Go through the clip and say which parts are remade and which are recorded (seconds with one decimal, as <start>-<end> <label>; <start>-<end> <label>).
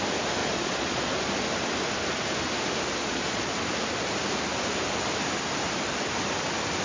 0.0-0.4 recorded; 0.4-1.1 remade; 1.1-3.0 recorded; 3.0-3.5 remade; 3.5-6.8 recorded